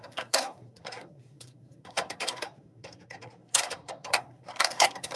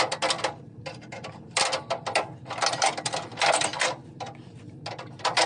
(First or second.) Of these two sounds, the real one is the second